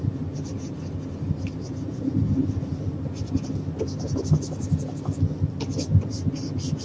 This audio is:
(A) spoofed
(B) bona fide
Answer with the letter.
B